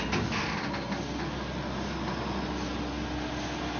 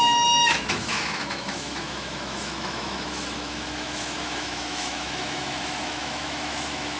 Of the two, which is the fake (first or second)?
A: second